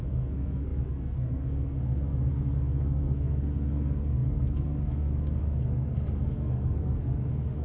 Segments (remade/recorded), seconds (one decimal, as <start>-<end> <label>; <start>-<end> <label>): 0.0-7.6 remade